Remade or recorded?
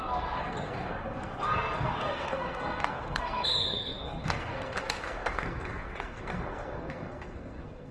remade